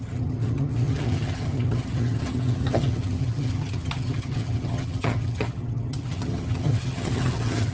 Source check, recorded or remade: remade